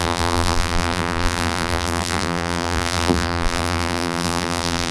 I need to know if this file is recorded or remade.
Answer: remade